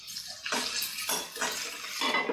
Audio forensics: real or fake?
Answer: fake